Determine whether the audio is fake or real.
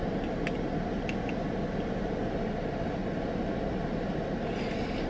real